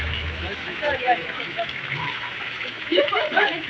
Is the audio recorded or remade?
remade